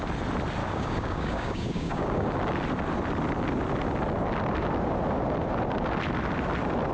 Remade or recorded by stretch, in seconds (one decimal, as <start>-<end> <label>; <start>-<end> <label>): 0.0-0.6 recorded; 0.6-2.3 remade; 2.3-6.9 recorded